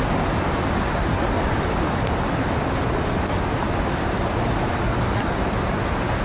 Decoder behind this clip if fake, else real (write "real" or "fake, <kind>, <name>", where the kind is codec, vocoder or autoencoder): real